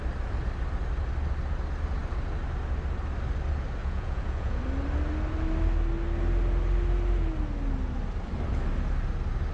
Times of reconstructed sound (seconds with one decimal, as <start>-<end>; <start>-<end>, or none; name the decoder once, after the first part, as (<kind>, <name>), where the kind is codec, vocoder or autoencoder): 3.8-4.6 (vocoder, Vocos)